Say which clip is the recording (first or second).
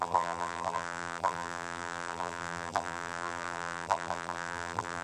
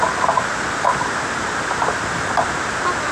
second